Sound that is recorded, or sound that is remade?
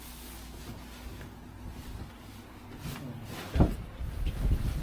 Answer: recorded